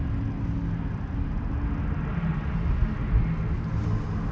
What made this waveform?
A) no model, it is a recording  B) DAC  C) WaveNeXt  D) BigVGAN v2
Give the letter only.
A